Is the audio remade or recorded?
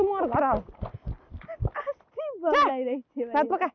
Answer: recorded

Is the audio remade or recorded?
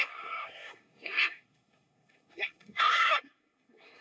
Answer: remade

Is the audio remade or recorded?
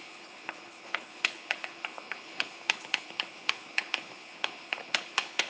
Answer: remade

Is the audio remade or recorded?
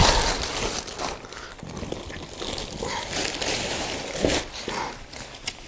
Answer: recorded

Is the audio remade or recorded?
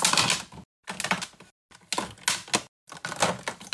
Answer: recorded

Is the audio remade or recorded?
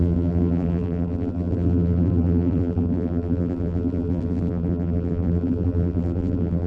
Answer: remade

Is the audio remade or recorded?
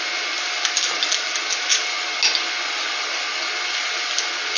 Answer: recorded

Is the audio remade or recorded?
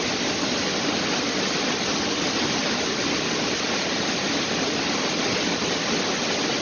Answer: recorded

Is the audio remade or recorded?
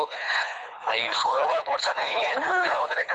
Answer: remade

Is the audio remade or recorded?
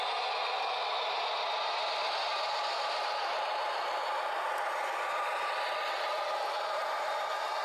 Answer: recorded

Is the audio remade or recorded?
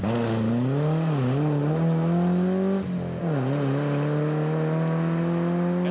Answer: recorded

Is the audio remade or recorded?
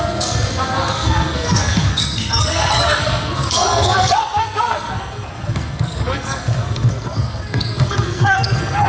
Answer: remade